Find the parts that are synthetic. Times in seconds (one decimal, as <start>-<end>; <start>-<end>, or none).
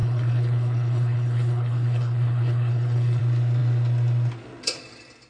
0.0-3.2